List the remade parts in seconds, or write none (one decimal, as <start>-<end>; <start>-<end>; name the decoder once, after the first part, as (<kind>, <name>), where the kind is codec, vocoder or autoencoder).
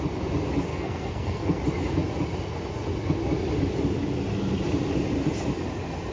0.7-1.6 (codec, SNAC)